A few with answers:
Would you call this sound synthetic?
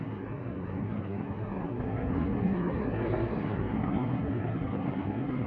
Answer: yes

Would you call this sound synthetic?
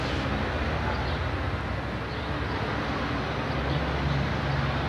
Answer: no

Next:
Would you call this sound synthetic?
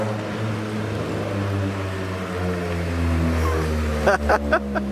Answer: no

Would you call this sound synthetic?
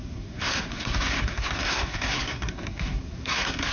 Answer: yes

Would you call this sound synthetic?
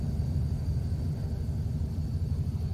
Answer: no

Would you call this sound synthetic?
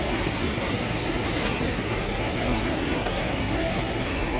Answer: yes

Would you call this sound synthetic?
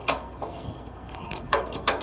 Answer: yes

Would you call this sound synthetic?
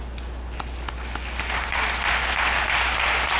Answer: no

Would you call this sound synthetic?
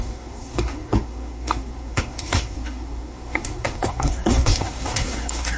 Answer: yes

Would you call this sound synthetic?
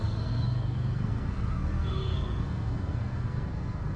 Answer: yes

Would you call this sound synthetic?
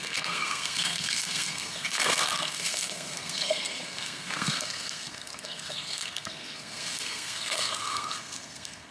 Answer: yes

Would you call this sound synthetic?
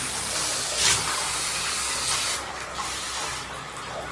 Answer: no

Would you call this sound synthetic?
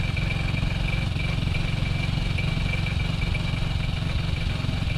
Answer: no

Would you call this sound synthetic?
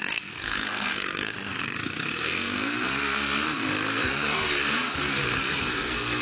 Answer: yes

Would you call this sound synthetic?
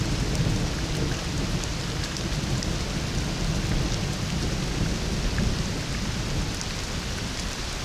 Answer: no